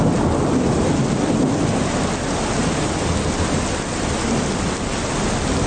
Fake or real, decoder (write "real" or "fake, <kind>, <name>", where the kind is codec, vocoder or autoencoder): real